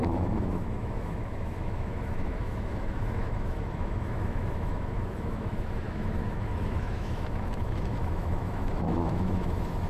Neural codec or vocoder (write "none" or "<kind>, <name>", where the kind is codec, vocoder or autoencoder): autoencoder, DAC-VAE